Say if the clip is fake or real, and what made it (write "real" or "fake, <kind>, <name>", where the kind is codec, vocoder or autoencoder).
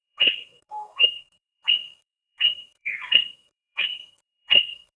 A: fake, codec, SNAC